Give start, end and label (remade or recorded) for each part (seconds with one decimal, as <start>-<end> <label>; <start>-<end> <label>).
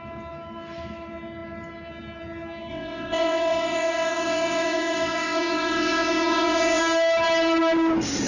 0.0-2.7 recorded; 2.7-6.8 remade; 6.8-8.3 recorded